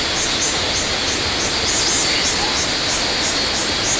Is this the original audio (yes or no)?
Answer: yes